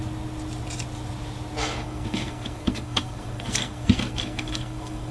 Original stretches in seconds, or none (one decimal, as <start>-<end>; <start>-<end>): 0.0-1.6